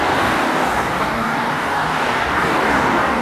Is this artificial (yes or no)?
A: yes